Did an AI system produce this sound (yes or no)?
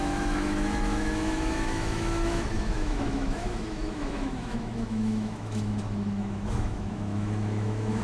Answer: yes